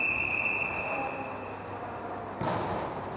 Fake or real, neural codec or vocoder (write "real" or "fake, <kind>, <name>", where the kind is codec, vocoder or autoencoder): fake, vocoder, BigVGAN v2